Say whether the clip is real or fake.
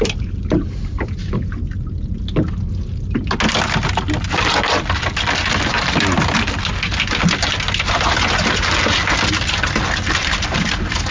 real